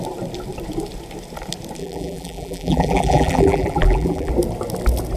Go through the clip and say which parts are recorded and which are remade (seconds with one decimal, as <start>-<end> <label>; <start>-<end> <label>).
0.0-1.8 recorded; 1.8-4.3 remade; 4.3-5.2 recorded